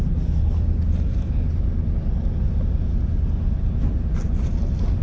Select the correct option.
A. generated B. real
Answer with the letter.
B